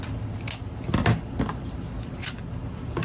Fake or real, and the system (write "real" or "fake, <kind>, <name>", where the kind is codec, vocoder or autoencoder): real